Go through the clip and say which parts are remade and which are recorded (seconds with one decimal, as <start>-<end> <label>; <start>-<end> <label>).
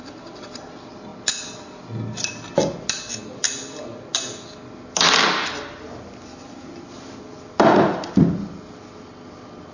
0.0-9.7 recorded